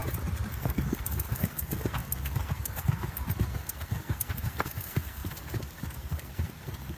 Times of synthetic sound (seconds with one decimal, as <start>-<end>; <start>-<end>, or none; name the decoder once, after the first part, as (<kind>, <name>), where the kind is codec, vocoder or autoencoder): 0.5-7.0 (codec, SNAC)